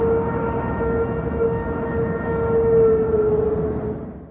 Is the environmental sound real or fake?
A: real